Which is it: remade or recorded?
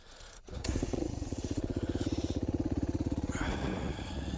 remade